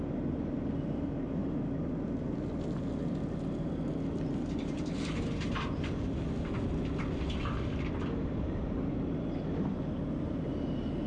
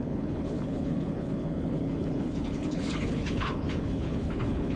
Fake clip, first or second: second